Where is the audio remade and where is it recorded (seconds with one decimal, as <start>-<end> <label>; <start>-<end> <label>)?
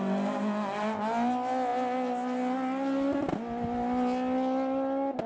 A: 0.0-5.3 recorded